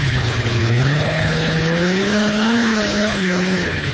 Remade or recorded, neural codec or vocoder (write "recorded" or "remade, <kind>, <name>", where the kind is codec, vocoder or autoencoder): remade, codec, HILCodec